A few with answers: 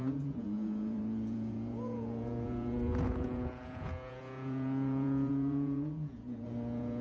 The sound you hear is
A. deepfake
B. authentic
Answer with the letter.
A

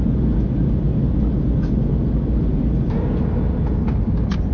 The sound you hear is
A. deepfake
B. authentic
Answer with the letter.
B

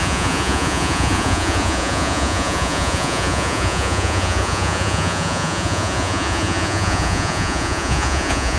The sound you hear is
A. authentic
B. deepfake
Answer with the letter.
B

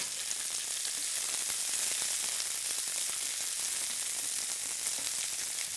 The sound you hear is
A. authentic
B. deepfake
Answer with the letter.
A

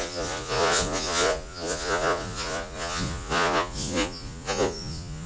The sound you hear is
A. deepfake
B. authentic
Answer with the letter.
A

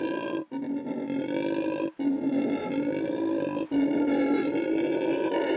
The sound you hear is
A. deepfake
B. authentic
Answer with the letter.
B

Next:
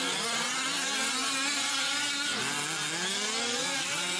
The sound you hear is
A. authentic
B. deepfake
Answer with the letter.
A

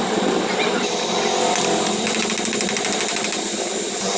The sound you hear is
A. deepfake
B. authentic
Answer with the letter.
B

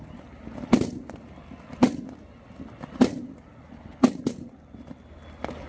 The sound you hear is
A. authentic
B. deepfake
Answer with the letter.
A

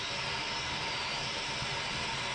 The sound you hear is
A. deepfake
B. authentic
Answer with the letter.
B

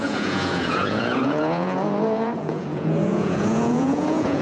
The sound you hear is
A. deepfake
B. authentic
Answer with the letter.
A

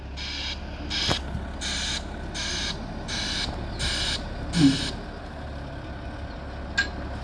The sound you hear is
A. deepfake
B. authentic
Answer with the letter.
B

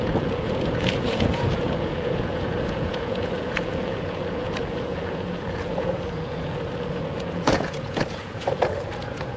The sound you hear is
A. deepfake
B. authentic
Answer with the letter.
A